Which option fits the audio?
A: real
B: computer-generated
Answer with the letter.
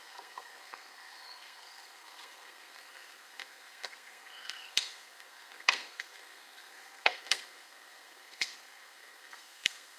B